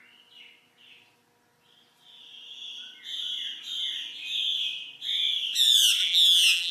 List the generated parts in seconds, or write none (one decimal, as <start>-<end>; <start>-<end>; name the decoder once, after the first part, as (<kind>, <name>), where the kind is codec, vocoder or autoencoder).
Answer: 6.0-6.7 (vocoder, BigVGAN v2)

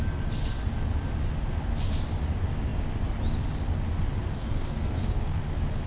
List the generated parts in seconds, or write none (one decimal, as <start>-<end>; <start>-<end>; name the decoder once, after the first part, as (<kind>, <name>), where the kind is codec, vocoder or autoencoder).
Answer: 4.4-5.4 (codec, SNAC)

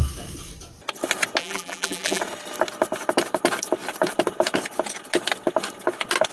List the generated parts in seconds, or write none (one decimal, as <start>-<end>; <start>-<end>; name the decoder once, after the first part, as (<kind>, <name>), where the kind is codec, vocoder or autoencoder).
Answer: 1.4-2.2 (vocoder, BigVGAN v2)

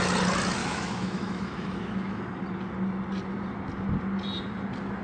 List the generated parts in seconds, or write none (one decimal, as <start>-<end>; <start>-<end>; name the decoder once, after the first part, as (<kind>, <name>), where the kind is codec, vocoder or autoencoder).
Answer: 0.6-2.2 (autoencoder, DAC-VAE)

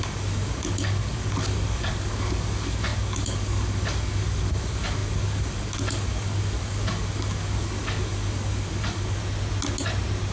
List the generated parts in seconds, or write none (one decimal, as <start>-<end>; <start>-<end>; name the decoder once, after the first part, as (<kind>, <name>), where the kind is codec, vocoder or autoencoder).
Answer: 0.0-9.2 (codec, DAC)

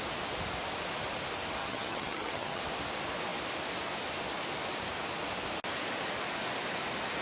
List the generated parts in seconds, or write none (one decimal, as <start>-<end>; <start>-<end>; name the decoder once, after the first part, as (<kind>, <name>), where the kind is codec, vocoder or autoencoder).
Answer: 1.6-2.6 (vocoder, HiFi-GAN)

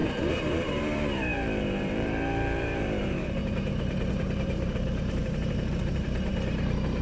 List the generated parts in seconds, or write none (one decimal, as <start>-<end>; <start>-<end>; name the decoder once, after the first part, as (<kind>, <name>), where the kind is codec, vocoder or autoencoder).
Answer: 0.0-7.0 (vocoder, BigVGAN v2)